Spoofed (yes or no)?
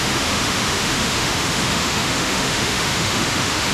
yes